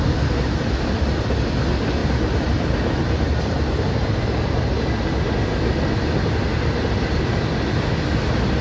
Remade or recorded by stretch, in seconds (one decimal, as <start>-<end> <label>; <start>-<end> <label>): 0.0-8.6 recorded